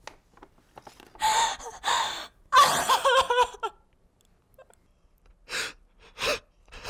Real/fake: real